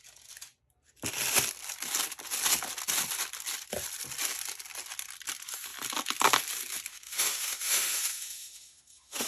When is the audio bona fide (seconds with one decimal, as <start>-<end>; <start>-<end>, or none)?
0.0-6.9